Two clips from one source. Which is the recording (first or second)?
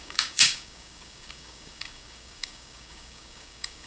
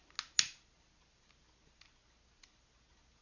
second